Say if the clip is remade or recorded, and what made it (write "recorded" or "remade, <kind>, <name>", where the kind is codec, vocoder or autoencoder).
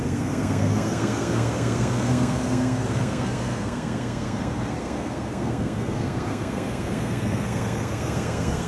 remade, codec, SNAC